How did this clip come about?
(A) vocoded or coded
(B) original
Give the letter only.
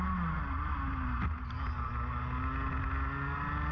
B